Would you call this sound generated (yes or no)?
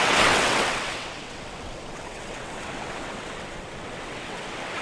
yes